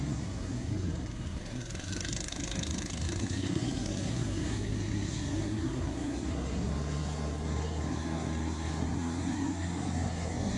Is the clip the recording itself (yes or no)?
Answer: no